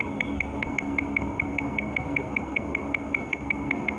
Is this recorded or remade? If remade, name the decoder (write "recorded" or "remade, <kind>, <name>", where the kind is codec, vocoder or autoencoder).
remade, codec, SNAC